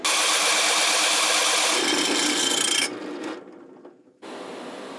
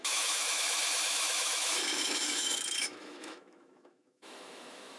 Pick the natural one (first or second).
first